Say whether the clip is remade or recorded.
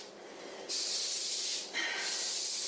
remade